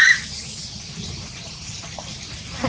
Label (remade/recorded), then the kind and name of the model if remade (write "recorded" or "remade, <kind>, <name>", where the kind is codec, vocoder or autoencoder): remade, vocoder, BigVGAN v2